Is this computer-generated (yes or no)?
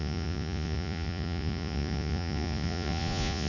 yes